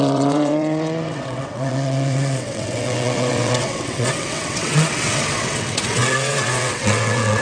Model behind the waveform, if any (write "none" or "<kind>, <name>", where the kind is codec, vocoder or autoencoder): vocoder, WaveNeXt